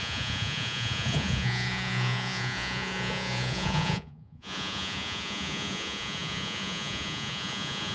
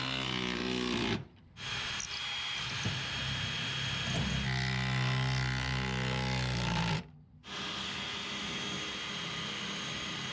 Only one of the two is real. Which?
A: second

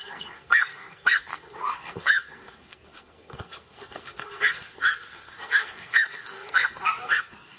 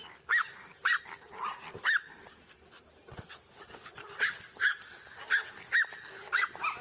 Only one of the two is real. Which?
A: second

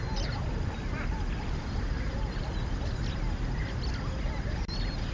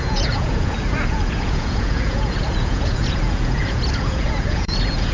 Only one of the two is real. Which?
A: first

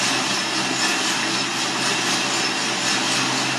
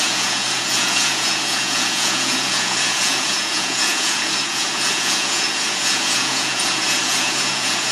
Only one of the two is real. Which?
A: first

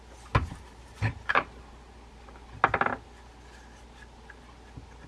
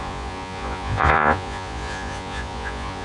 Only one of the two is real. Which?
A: first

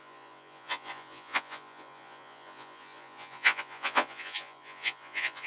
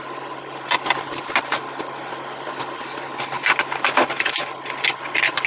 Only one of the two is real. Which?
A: second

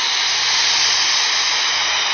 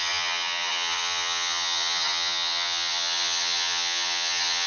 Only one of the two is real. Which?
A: first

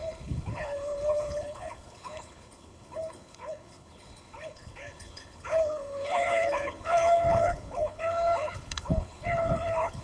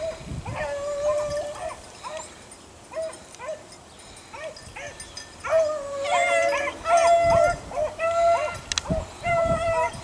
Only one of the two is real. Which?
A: second